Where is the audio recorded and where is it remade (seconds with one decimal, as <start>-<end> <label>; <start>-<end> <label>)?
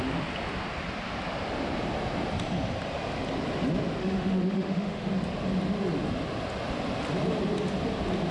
0.0-4.0 recorded; 4.0-5.1 remade; 5.1-8.3 recorded